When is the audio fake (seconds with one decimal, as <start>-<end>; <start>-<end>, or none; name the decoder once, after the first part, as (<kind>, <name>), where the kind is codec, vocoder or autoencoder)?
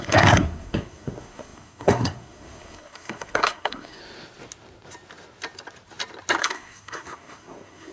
0.0-4.0 (codec, SNAC); 6.4-7.9